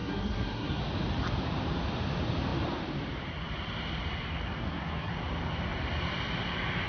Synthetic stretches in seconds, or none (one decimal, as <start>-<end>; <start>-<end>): 0.0-0.8; 4.6-5.1